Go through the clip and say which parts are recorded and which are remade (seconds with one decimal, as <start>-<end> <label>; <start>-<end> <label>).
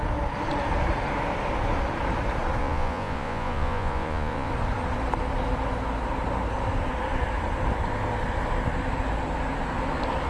0.0-2.6 recorded; 2.6-4.5 remade; 4.5-10.3 recorded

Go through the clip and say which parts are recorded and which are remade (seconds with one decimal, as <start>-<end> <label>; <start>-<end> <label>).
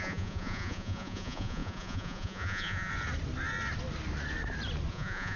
0.0-2.9 remade; 2.9-4.9 recorded; 4.9-5.4 remade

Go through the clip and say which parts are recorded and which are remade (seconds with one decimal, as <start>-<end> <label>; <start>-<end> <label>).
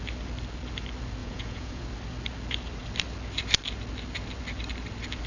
0.0-1.2 recorded; 1.2-1.8 remade; 1.8-5.3 recorded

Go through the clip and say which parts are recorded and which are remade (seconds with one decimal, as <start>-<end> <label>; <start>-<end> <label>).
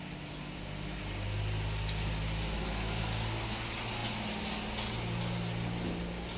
0.0-6.4 recorded